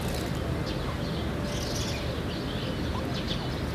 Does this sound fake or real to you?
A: real